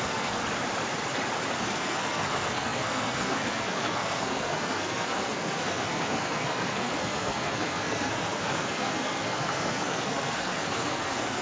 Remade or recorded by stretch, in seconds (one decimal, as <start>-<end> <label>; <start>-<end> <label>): 0.0-0.4 remade; 0.4-1.6 recorded; 1.6-11.4 remade